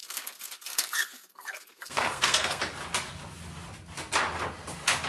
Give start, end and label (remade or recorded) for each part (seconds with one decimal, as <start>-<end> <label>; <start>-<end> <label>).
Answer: 0.0-2.6 remade; 2.6-5.1 recorded